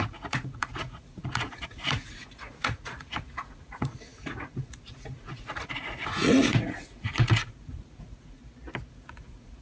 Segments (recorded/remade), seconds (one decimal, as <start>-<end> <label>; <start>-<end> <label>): 0.0-8.4 remade; 8.4-8.9 recorded; 8.9-9.6 remade